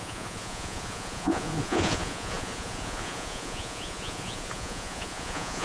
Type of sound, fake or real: fake